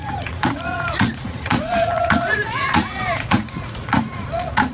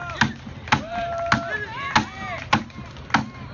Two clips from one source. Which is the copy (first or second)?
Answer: first